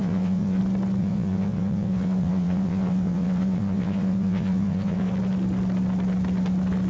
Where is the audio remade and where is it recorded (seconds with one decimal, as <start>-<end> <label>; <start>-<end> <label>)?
0.0-0.6 remade; 0.6-1.0 recorded; 1.0-5.1 remade; 5.1-6.9 recorded